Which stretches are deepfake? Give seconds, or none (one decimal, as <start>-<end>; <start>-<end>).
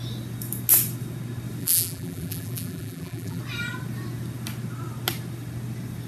1.6-3.4